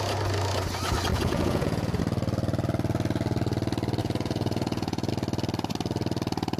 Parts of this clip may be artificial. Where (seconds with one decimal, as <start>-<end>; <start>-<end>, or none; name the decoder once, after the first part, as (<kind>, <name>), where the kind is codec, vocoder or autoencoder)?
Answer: 1.1-2.0 (vocoder, Vocos); 4.0-5.1